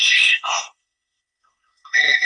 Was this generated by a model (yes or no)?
yes